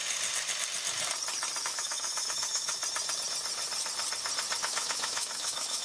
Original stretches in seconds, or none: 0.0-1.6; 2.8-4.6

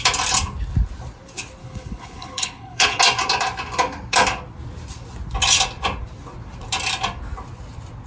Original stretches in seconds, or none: 0.0-1.6; 3.0-8.1

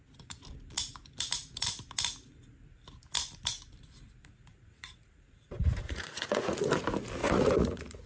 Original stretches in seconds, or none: 0.0-4.5; 6.8-7.2

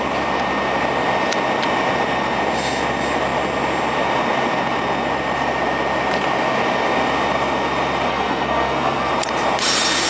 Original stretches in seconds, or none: 0.0-8.1; 9.1-10.1

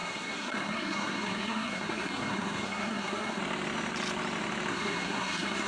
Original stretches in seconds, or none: 3.4-4.7

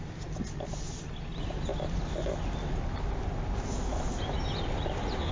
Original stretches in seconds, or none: 0.0-5.3

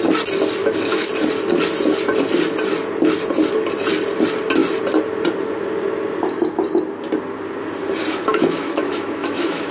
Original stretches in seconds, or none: 0.0-0.6; 1.1-8.3

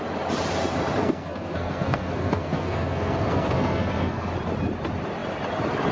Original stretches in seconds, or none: 0.0-1.0; 4.3-5.9